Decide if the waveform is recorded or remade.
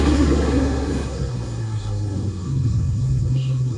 remade